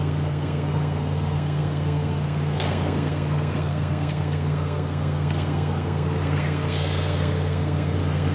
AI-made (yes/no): yes